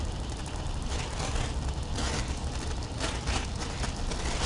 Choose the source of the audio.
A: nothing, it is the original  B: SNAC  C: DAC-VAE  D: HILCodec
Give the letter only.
A